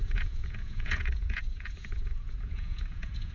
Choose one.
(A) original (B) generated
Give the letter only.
B